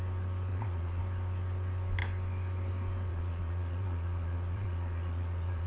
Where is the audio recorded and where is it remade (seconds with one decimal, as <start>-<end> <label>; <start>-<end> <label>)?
0.0-0.5 recorded; 0.5-1.0 remade; 1.0-3.1 recorded; 3.1-5.7 remade